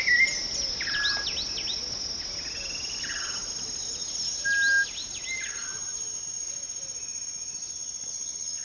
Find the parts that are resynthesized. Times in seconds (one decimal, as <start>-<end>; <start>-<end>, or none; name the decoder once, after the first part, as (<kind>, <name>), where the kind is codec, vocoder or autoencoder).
none